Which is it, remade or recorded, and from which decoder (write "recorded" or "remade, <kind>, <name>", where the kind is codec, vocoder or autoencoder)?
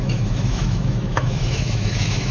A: remade, autoencoder, DAC-VAE